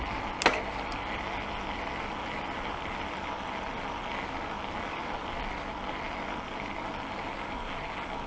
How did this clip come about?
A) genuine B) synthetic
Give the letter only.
A